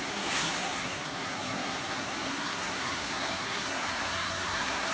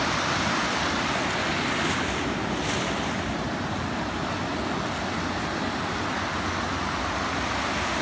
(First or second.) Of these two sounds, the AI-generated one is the first